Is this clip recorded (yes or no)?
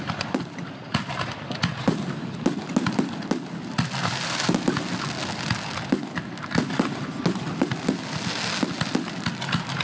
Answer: yes